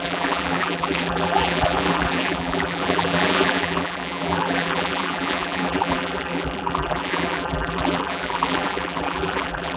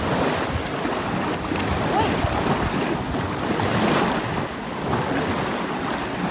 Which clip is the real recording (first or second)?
second